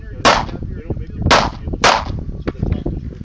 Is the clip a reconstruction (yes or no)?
no